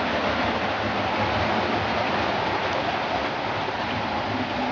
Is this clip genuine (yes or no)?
yes